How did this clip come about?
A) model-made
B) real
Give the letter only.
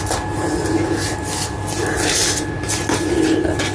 B